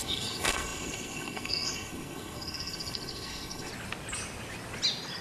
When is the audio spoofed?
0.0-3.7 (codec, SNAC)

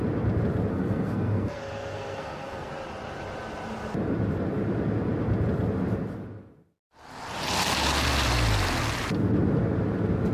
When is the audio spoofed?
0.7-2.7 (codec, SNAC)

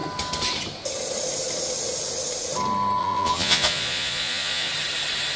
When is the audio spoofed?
3.0-4.7 (vocoder, Vocos)

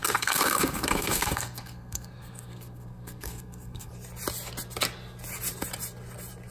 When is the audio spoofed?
0.0-3.9 (codec, SNAC)

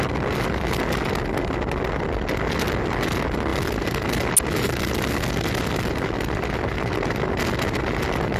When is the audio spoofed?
none

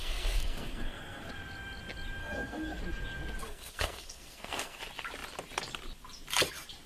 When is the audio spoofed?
0.0-1.3 (codec, SNAC); 2.2-2.8; 3.4-4.8

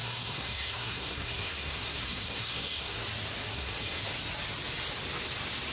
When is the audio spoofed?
0.0-3.0 (codec, SNAC); 3.4-4.0

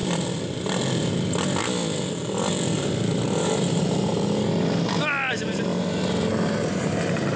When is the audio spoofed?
3.0-4.1 (vocoder, BigVGAN v2); 5.3-5.7; 6.7-7.4